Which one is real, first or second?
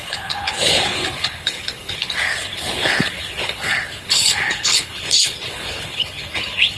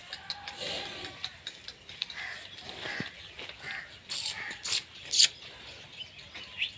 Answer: second